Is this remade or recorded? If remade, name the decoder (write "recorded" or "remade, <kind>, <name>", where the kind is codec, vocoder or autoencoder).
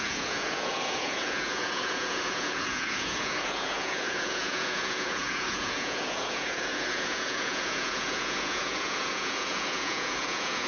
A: remade, vocoder, Vocos